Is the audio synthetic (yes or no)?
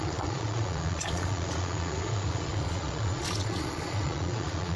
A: yes